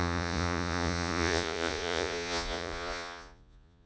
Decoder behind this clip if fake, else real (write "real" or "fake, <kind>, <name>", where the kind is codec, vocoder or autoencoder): fake, vocoder, Vocos